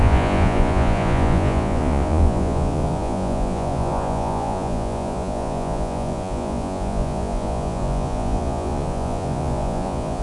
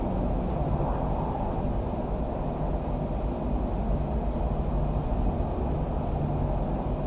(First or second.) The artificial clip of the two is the first